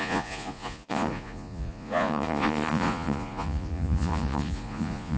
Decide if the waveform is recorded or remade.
remade